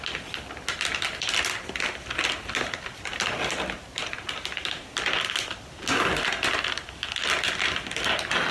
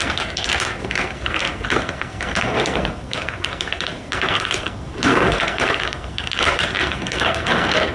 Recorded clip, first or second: first